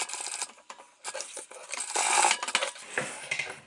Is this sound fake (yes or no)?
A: no